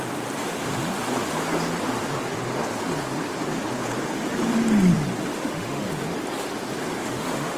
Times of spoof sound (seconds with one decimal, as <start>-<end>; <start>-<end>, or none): 5.3-5.9; 7.0-7.6